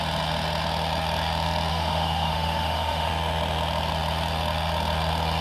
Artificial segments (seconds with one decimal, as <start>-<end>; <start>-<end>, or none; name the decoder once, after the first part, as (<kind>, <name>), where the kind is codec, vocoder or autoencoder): 1.7-3.1 (autoencoder, DAC-VAE)